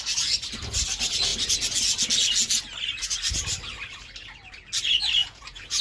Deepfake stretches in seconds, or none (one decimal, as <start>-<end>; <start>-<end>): 5.2-5.8